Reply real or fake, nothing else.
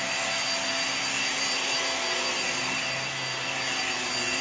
real